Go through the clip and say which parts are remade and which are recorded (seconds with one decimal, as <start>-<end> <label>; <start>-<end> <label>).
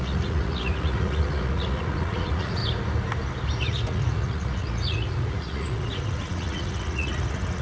0.0-2.6 remade; 2.6-3.6 recorded; 3.6-7.6 remade